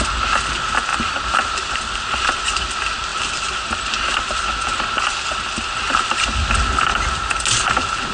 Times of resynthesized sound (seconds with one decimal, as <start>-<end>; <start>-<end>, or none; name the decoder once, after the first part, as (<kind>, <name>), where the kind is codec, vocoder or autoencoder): 0.9-2.4 (vocoder, BigVGAN v2)